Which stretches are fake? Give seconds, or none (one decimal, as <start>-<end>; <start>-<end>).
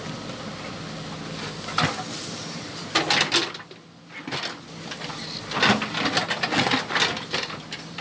none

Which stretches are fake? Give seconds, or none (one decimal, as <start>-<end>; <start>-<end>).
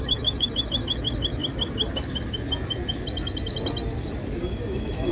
0.0-1.4; 4.5-5.1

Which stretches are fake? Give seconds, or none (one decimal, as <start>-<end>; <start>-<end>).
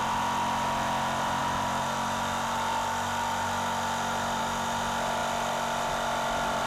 none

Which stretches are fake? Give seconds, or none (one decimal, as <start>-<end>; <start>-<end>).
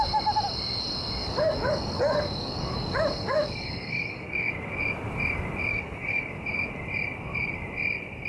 1.2-4.5; 5.7-6.3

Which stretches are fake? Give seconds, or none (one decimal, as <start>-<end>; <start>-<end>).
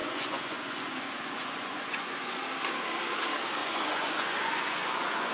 0.0-2.4; 3.6-5.3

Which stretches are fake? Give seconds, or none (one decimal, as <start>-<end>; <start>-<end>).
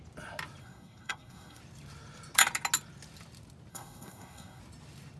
0.6-1.6; 3.7-4.6